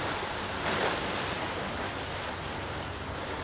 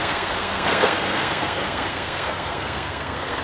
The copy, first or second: second